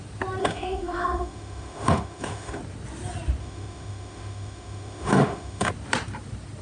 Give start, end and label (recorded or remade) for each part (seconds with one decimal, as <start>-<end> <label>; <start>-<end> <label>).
0.0-0.4 recorded; 0.4-2.6 remade; 2.6-3.4 recorded; 3.4-5.7 remade; 5.7-6.6 recorded